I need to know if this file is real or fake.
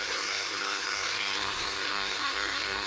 fake